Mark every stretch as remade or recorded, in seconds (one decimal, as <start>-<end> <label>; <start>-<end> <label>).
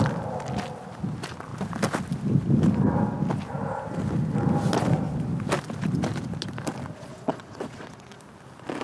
0.0-7.1 recorded; 7.1-8.2 remade; 8.2-8.8 recorded